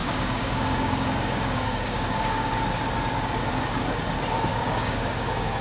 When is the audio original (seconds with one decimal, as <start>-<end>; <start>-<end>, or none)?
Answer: 2.5-4.5